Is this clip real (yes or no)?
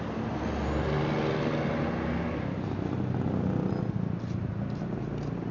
yes